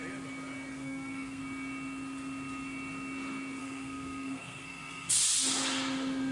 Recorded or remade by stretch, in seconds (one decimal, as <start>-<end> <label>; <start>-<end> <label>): 0.0-0.7 recorded; 0.7-1.4 remade; 1.4-3.6 recorded; 3.6-5.2 remade; 5.2-6.3 recorded